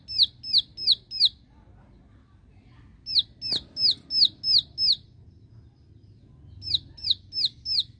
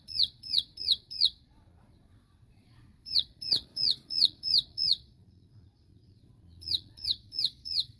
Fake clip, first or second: second